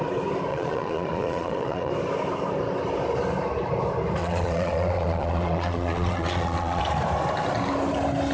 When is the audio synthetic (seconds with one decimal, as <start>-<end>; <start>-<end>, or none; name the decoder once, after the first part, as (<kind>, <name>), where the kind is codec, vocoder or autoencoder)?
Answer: 0.5-1.9 (vocoder, Vocos); 4.2-6.8